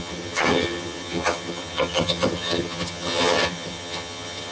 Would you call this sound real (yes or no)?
no